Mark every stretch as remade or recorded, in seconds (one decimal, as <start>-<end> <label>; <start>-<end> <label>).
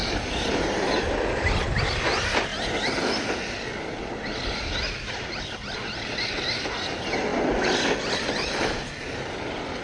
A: 0.0-1.1 remade; 1.1-9.8 recorded